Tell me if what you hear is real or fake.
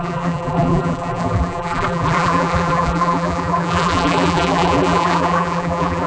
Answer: fake